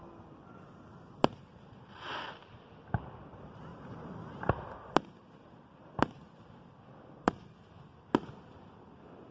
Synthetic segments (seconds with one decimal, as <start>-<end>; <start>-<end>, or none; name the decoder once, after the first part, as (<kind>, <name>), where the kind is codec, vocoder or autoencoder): none

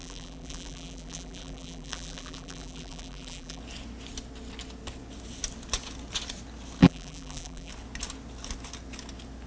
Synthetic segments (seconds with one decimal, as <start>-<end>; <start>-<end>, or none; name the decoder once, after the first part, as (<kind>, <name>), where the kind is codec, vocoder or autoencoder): 0.0-3.6 (vocoder, BigVGAN v2); 6.8-7.7

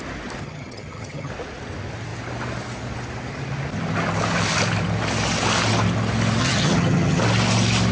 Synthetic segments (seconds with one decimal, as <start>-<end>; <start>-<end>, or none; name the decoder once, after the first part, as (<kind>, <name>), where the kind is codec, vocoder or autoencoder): 0.4-1.3 (vocoder, HiFi-GAN); 6.4-7.2

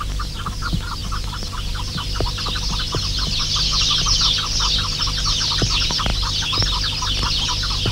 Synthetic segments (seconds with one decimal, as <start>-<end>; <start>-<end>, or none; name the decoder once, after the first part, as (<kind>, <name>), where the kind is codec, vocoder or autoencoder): none

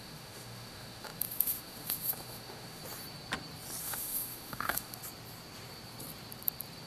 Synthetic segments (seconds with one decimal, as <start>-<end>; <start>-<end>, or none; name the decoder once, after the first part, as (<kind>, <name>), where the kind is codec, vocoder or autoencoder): 0.0-2.8 (autoencoder, DAC-VAE); 3.8-5.0

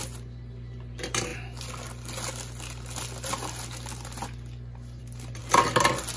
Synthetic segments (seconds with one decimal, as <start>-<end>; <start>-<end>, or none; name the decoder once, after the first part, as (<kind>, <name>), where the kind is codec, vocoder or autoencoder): none

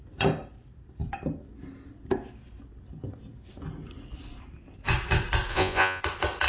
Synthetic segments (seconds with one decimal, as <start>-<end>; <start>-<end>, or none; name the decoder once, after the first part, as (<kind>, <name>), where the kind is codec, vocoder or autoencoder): 5.5-6.0 (vocoder, Vocos)

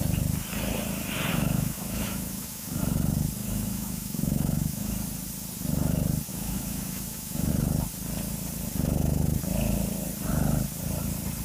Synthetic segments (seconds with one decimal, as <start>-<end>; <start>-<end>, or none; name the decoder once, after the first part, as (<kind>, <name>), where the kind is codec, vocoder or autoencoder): 1.3-2.8 (autoencoder, DAC-VAE); 3.4-4.9; 6.3-7.5